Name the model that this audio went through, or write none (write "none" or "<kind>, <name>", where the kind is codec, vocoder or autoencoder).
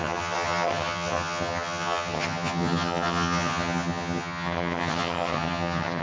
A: vocoder, HiFi-GAN